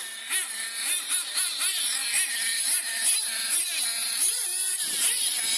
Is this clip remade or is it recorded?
recorded